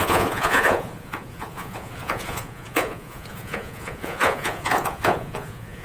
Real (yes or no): no